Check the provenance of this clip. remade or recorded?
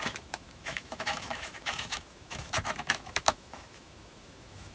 remade